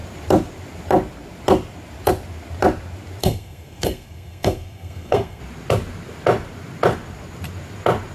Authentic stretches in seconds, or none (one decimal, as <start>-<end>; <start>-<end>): 0.0-3.2; 5.4-8.1